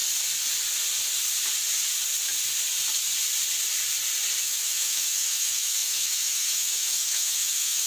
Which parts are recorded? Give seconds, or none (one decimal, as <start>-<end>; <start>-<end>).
0.0-4.4